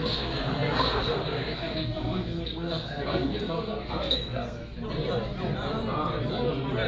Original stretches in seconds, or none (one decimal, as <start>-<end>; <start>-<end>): 4.6-6.9

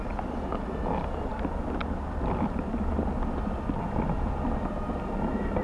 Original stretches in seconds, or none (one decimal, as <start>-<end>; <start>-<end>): 0.0-5.6